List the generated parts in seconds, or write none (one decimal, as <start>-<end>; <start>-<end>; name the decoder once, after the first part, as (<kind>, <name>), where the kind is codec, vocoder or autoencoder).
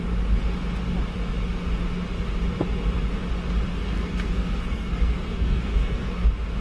3.7-6.1 (codec, SNAC)